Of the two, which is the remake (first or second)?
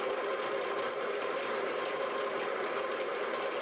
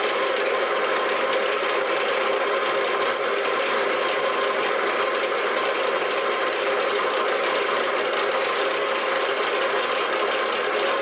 first